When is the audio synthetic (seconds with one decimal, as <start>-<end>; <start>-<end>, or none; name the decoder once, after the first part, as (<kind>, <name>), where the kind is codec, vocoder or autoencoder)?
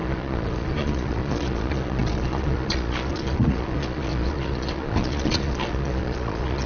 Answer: 0.0-6.7 (vocoder, Vocos)